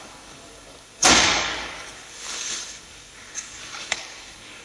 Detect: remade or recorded remade